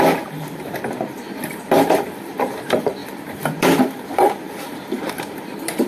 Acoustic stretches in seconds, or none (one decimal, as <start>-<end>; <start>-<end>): none